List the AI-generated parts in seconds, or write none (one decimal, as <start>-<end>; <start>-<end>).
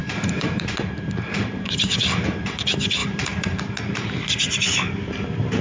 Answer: 0.0-1.8; 3.0-3.6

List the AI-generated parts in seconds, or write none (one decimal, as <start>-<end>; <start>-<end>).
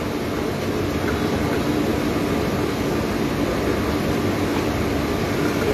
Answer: none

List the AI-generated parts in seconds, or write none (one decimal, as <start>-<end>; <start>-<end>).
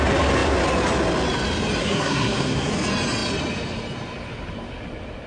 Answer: 1.8-2.7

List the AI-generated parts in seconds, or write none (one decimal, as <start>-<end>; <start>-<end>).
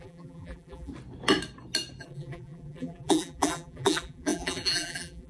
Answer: 0.0-0.9; 2.0-5.3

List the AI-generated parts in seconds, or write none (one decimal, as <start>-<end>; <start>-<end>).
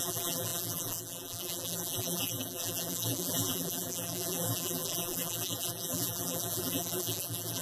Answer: 0.0-7.6